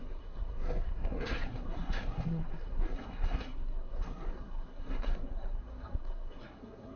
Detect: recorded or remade remade